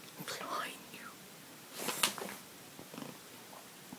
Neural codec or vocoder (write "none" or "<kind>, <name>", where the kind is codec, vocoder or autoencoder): none